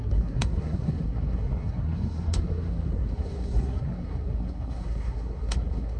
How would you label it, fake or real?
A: fake